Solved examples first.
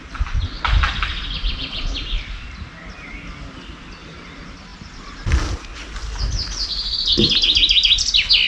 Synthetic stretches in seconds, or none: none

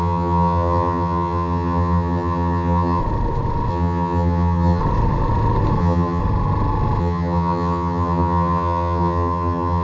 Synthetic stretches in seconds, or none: 0.0-3.0 (vocoder, HiFi-GAN); 3.7-4.8; 5.8-6.2; 7.0-9.8

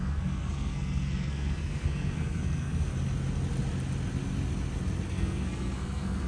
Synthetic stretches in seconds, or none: 0.0-2.9 (codec, SNAC); 5.1-6.3

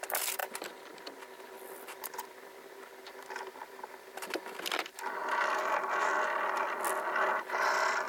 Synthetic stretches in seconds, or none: 0.0-0.4 (vocoder, BigVGAN v2); 1.4-5.2; 7.3-8.1